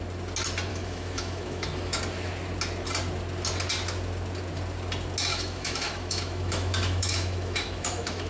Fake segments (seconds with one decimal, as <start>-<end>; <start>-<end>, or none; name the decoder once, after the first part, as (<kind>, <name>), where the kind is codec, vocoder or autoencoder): 0.7-2.0 (autoencoder, DAC-VAE); 5.3-8.3